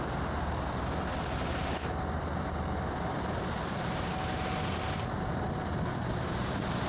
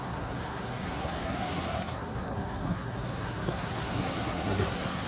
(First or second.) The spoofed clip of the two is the second